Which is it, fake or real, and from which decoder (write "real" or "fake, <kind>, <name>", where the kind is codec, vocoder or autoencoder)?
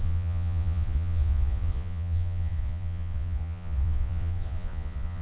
fake, vocoder, Vocos